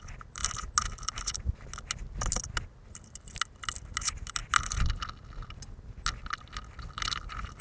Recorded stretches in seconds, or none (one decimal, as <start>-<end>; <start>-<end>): 0.0-7.6